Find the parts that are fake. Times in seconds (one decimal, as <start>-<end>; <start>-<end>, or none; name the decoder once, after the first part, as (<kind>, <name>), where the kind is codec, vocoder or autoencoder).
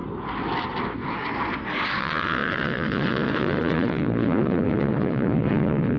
2.0-6.0 (vocoder, Vocos)